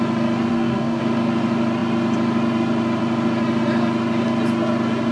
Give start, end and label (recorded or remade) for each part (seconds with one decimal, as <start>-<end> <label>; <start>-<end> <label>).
0.0-0.5 recorded; 0.5-1.0 remade; 1.0-5.1 recorded